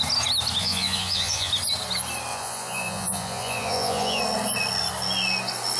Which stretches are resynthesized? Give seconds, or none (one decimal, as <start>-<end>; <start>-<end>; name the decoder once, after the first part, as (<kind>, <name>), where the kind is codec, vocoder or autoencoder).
0.6-1.5 (vocoder, Vocos); 2.3-4.2